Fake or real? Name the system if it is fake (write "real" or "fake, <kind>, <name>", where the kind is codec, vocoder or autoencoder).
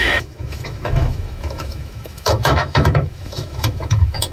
fake, autoencoder, DAC-VAE